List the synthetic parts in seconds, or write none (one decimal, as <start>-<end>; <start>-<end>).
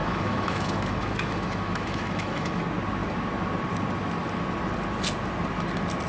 0.0-2.6